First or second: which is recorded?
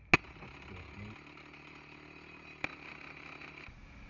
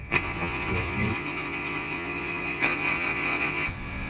first